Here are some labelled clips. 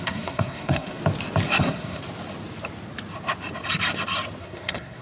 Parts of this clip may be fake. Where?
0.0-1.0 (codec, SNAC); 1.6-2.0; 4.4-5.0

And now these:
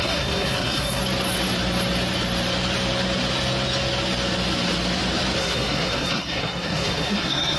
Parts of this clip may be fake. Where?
0.0-1.0 (codec, SNAC); 5.4-7.6

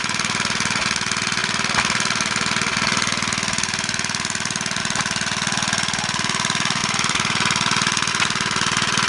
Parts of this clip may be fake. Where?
none

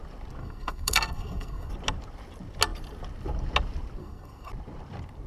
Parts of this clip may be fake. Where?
0.4-1.7 (codec, SNAC); 4.0-4.5

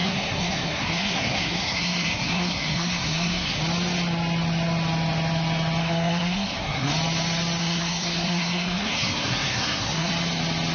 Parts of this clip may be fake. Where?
0.0-3.6 (codec, SNAC); 5.8-6.9; 7.6-10.1

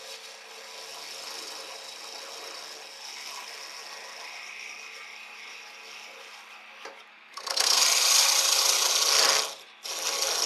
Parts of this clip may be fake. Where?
7.1-7.8 (codec, SNAC)

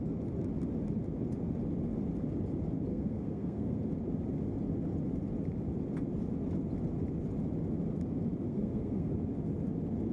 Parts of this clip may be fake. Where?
2.9-3.8 (codec, SNAC); 8.5-9.1